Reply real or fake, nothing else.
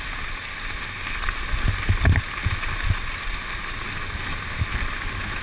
real